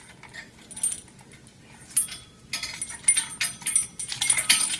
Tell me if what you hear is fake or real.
real